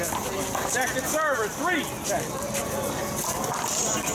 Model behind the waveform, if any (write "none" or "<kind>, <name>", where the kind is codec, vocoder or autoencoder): none